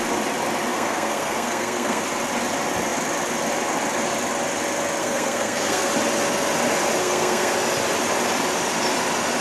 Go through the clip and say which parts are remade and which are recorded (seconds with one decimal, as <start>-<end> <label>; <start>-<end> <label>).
0.0-0.7 recorded; 0.7-2.0 remade; 2.0-5.0 recorded; 5.0-5.9 remade; 5.9-7.0 recorded; 7.0-7.5 remade; 7.5-9.4 recorded